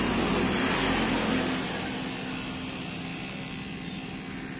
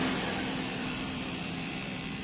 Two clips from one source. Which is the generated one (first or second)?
second